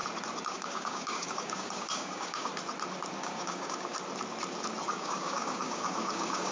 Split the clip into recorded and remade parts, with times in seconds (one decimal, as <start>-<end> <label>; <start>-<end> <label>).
0.0-0.5 recorded; 0.5-2.5 remade; 2.5-3.2 recorded; 3.2-3.9 remade; 3.9-4.9 recorded; 4.9-6.5 remade